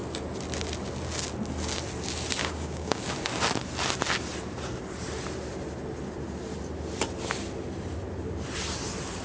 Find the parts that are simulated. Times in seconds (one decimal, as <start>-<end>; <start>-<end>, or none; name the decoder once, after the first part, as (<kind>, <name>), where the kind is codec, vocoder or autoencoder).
2.4-3.0 (codec, DAC)